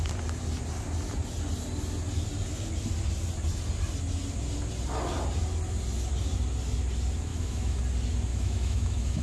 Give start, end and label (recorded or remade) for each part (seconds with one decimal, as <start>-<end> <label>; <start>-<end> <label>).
0.0-7.3 recorded; 7.3-7.8 remade; 7.8-8.3 recorded; 8.3-9.2 remade